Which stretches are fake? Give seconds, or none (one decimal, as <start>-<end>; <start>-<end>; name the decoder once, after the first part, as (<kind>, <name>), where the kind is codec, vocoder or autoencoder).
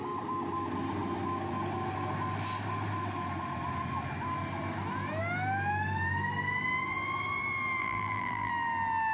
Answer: 7.8-8.5 (vocoder, BigVGAN v2)